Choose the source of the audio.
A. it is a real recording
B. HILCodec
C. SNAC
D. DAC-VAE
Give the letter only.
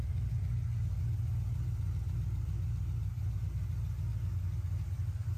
A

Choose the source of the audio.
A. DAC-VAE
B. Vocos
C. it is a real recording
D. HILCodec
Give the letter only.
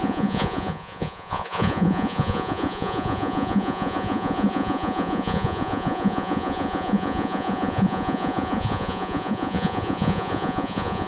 B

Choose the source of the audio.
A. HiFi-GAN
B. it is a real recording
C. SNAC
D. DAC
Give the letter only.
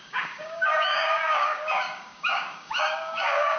D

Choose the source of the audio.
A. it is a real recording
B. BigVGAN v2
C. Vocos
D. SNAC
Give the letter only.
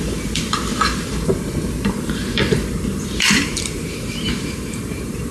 B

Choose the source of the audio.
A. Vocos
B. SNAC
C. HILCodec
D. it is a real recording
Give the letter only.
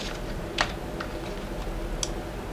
D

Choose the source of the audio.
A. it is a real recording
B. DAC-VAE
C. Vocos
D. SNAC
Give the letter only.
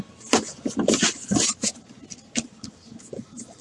A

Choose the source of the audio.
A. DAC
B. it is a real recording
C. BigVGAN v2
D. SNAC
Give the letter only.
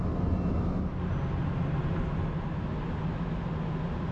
B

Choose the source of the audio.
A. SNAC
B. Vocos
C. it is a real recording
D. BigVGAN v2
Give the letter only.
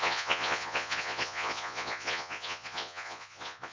B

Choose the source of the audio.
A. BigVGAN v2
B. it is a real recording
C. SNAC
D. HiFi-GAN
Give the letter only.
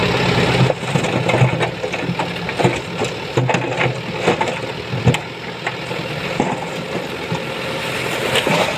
B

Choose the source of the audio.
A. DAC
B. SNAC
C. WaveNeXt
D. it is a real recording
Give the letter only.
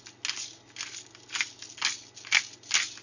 D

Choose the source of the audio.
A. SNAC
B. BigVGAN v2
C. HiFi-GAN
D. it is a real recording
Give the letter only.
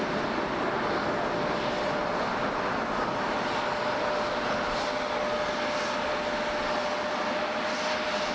D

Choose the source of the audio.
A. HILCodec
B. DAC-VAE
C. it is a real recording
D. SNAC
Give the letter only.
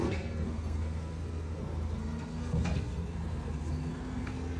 D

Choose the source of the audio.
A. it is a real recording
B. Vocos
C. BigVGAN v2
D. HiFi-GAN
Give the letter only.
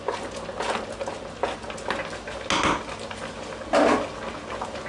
A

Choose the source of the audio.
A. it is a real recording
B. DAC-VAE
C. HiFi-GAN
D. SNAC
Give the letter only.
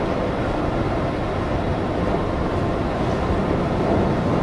A